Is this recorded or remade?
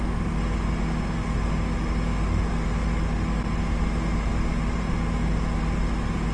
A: recorded